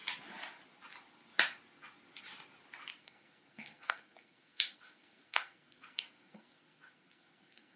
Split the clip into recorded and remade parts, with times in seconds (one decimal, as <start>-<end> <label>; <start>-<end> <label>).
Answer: 0.0-2.9 recorded; 2.9-7.8 remade